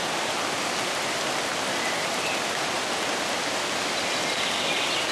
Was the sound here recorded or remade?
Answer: recorded